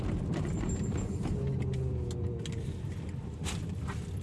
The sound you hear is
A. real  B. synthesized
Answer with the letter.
A